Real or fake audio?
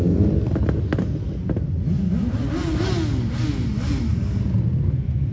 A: real